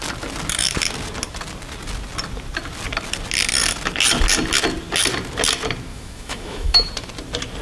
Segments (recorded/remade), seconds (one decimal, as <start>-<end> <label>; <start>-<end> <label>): 0.0-5.9 recorded; 5.9-6.9 remade; 6.9-7.6 recorded